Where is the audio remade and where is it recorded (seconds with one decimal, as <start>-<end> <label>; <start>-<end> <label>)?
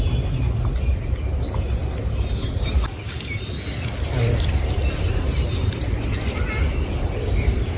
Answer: 0.0-7.8 recorded